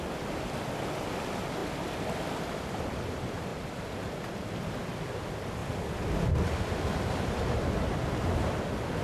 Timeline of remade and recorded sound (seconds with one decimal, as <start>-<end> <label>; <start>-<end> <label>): 0.0-9.0 recorded